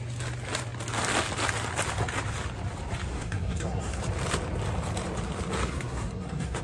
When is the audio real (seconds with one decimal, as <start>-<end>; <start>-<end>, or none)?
0.0-3.1; 4.0-5.6